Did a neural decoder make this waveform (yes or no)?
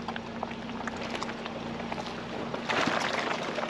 no